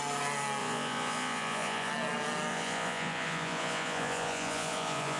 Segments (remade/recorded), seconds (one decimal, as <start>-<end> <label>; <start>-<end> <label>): 0.0-0.6 recorded; 0.6-1.9 remade; 1.9-2.5 recorded; 2.5-5.2 remade